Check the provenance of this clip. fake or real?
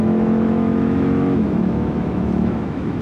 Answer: fake